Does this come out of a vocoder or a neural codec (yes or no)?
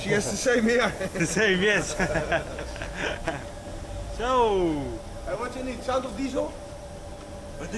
no